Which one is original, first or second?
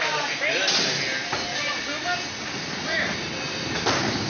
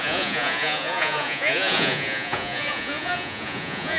first